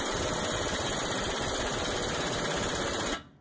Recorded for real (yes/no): yes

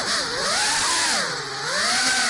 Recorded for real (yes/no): no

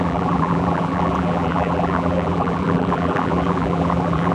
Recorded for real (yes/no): no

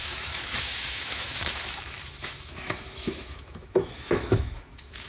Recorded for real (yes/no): no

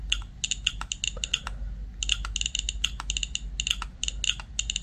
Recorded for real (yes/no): yes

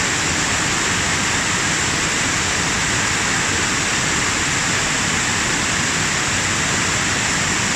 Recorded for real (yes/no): yes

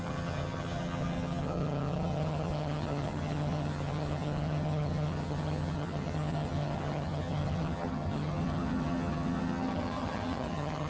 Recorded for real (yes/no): no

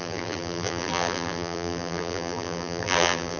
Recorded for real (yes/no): no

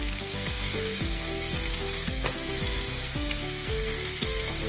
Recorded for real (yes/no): no